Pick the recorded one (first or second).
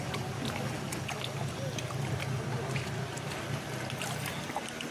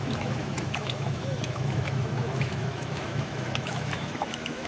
first